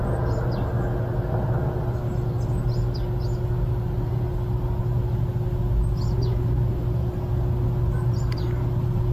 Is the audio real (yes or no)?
yes